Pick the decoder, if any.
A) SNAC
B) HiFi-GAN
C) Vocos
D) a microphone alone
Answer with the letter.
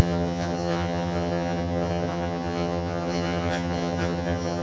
B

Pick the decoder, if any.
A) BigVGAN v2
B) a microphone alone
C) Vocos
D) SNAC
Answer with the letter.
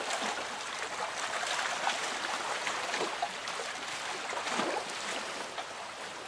B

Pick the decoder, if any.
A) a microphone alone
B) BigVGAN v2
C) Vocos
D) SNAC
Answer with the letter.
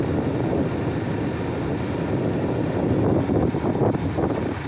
A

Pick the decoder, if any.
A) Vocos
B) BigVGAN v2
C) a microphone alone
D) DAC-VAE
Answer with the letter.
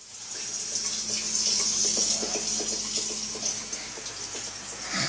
C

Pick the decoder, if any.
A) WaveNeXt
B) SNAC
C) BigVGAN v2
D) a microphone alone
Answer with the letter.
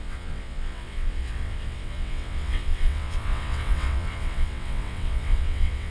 A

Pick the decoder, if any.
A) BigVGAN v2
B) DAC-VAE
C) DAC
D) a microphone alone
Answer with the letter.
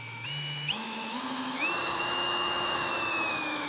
B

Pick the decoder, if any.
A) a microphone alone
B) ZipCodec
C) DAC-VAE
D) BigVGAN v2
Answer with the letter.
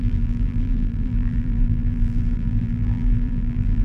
D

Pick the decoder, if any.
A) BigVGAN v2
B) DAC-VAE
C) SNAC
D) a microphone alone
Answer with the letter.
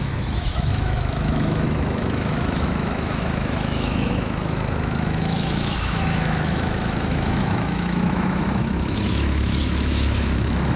B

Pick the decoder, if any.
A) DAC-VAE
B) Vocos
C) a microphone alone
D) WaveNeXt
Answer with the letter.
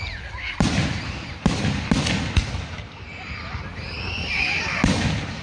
C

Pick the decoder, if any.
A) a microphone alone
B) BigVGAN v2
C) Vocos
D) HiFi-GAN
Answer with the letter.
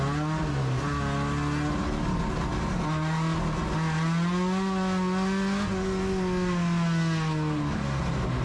A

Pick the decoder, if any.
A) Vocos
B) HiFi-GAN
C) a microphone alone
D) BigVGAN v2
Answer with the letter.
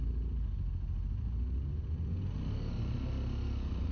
C